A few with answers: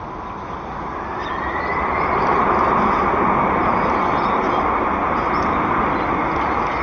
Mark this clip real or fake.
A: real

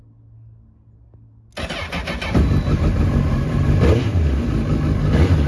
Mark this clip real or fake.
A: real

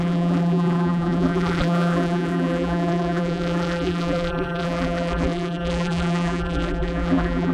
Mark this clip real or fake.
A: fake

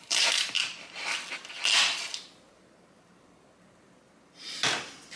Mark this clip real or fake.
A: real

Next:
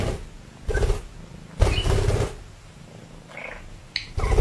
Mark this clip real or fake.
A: real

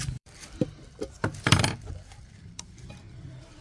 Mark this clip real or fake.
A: fake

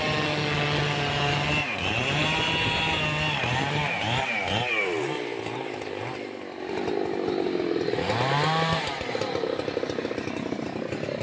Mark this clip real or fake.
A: real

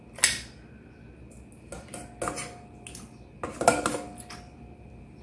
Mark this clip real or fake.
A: real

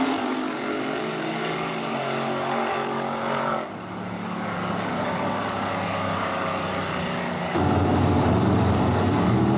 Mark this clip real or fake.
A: fake